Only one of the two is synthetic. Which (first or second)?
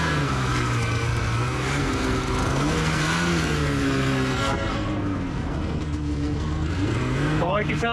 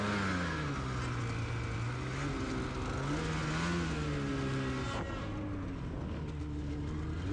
first